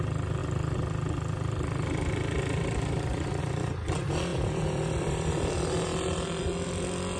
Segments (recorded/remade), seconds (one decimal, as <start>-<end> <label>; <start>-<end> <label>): 0.0-4.3 recorded; 4.3-6.4 remade; 6.4-7.2 recorded